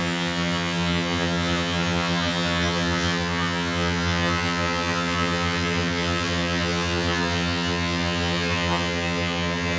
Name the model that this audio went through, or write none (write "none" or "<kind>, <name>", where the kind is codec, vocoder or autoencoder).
vocoder, HiFi-GAN